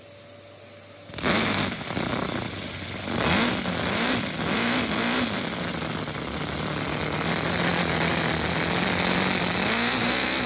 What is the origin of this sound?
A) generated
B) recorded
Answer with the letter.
B